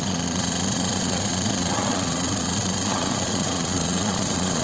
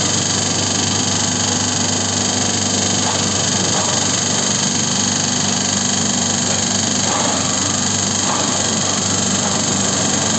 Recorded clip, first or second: second